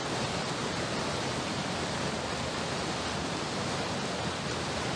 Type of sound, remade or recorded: recorded